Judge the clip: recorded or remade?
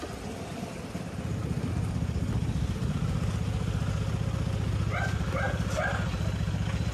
recorded